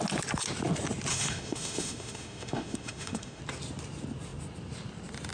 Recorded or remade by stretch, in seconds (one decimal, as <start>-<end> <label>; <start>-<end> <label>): 0.0-1.1 recorded; 1.1-3.4 remade; 3.4-5.3 recorded